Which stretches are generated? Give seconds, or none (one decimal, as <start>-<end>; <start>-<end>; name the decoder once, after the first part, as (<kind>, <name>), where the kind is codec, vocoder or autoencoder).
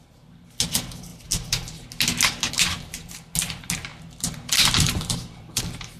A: 3.9-5.6 (vocoder, BigVGAN v2)